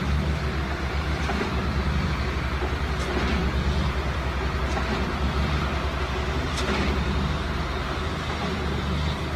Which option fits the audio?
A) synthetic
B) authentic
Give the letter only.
A